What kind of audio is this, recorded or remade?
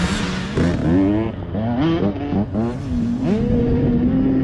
recorded